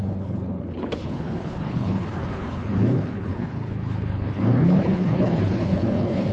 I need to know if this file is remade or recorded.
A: remade